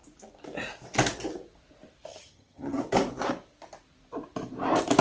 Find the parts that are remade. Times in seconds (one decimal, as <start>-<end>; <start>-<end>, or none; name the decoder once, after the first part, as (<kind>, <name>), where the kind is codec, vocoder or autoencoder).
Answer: 2.1-2.8 (vocoder, HiFi-GAN)